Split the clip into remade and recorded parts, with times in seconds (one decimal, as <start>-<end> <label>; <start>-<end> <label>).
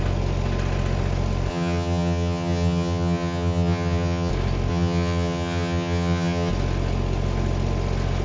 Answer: 0.0-1.5 recorded; 1.5-4.3 remade; 4.3-4.7 recorded; 4.7-6.5 remade; 6.5-8.2 recorded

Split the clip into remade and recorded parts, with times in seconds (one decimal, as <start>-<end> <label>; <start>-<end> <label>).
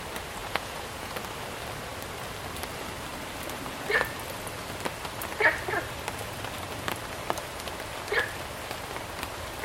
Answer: 0.0-0.4 recorded; 0.4-1.1 remade; 1.1-9.6 recorded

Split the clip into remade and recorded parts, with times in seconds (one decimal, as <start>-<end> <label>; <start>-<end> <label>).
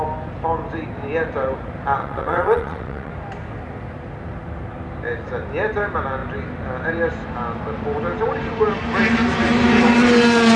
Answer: 0.0-2.0 recorded; 2.0-3.1 remade; 3.1-10.6 recorded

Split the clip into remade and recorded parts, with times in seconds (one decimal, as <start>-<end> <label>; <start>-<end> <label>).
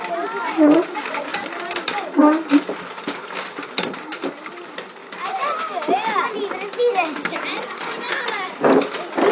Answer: 0.0-7.5 recorded; 7.5-8.0 remade; 8.0-9.3 recorded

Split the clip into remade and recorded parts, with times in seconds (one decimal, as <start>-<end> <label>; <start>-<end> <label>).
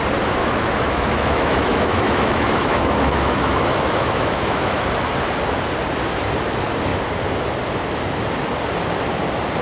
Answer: 0.0-0.4 recorded; 0.4-4.7 remade; 4.7-9.6 recorded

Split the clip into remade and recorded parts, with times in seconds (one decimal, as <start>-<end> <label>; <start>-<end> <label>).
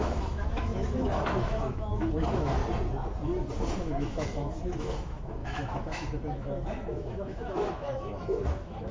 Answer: 0.0-2.6 remade; 2.6-3.8 recorded; 3.8-8.9 remade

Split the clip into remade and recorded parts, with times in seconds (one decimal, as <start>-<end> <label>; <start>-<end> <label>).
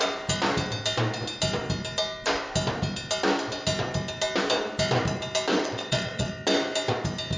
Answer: 0.0-5.5 recorded; 5.5-6.3 remade; 6.3-7.4 recorded